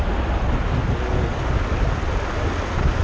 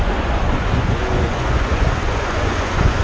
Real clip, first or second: first